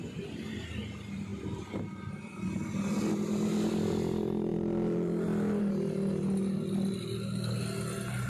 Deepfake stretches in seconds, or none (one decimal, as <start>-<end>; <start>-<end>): none